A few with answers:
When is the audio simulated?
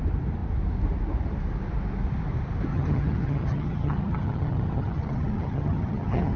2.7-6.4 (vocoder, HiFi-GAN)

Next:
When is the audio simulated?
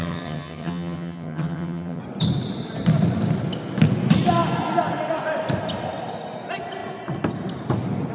0.0-2.0 (vocoder, HiFi-GAN)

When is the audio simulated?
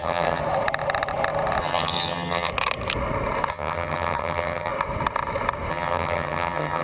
0.0-0.4 (vocoder, HiFi-GAN); 1.6-2.5; 3.5-4.7; 5.7-6.8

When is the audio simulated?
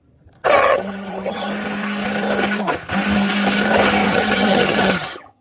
0.6-1.5 (vocoder, HiFi-GAN); 4.0-5.4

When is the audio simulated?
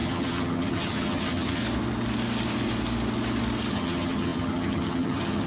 0.0-1.6 (vocoder, HiFi-GAN); 3.7-5.5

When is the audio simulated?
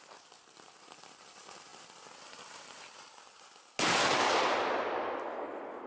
none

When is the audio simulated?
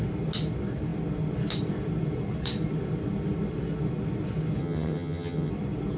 4.6-5.5 (vocoder, HiFi-GAN)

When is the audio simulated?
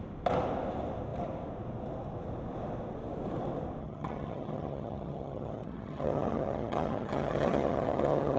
3.8-8.4 (vocoder, HiFi-GAN)